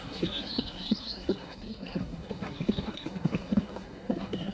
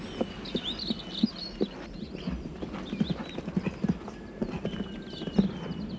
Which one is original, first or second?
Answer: second